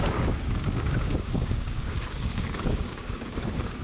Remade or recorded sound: remade